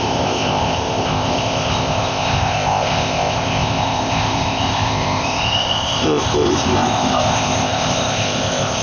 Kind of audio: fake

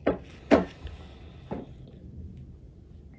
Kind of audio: real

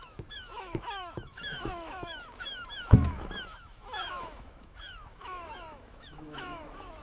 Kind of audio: fake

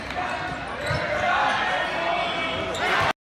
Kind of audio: real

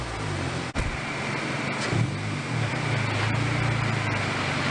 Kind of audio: real